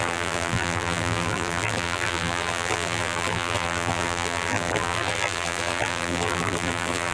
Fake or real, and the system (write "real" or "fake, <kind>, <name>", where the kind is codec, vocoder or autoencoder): fake, vocoder, BigVGAN v2